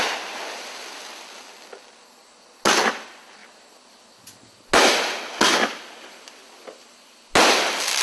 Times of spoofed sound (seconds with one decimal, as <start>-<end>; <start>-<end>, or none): none